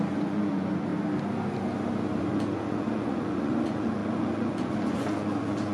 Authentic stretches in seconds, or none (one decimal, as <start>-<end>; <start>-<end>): 0.9-2.2